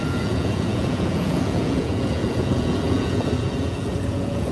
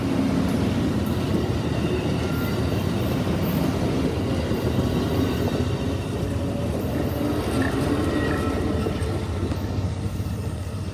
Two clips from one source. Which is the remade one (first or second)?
first